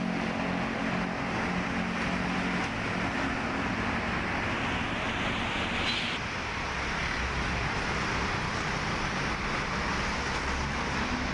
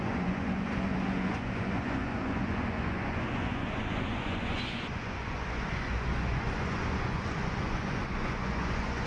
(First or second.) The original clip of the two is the first